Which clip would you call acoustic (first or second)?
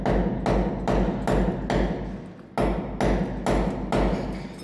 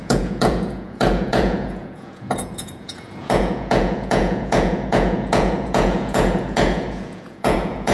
first